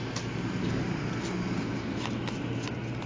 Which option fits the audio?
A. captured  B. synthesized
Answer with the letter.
A